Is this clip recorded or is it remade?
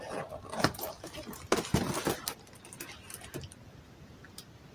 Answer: recorded